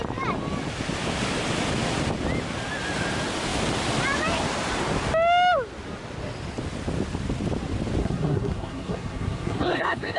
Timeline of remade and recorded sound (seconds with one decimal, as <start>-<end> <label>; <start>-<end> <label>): 0.0-8.0 recorded; 8.0-10.2 remade